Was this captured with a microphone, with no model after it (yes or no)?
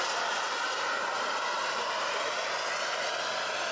yes